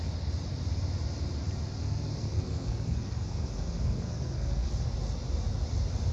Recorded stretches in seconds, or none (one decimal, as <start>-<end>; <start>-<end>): 0.0-1.8; 4.7-6.1